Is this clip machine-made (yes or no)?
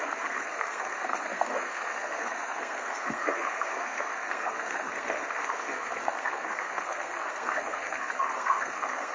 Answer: yes